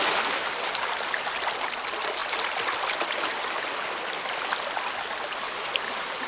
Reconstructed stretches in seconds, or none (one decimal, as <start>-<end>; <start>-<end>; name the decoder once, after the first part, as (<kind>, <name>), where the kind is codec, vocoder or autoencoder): none

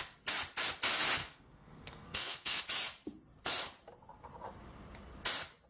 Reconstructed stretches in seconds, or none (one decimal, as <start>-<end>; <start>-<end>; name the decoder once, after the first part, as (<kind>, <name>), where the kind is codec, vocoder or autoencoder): 1.2-2.6 (codec, SNAC)

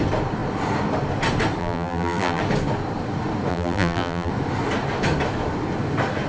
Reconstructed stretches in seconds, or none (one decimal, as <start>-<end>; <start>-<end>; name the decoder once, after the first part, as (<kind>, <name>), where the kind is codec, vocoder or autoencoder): 1.6-2.4 (vocoder, BigVGAN v2); 3.5-4.3

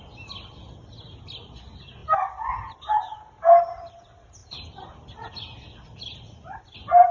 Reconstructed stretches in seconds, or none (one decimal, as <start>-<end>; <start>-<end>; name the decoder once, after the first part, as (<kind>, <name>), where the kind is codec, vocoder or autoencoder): none

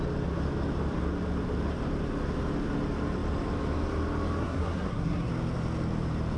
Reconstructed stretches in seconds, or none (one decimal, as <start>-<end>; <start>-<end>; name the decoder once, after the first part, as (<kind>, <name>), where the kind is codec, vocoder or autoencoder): 4.4-5.3 (codec, SNAC)

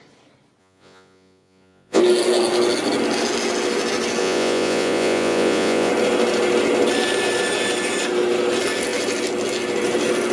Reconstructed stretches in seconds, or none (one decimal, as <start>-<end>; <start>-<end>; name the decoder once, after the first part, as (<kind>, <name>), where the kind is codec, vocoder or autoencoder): 0.6-2.0 (vocoder, Vocos); 4.2-5.9